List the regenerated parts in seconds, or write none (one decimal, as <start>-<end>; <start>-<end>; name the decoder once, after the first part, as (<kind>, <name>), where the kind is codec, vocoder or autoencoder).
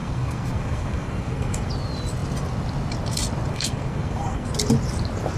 0.0-1.7 (codec, SNAC); 3.5-4.5